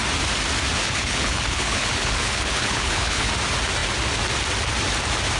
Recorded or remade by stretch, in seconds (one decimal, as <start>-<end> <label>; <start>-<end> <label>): 0.0-0.8 recorded; 0.8-3.3 remade; 3.3-5.4 recorded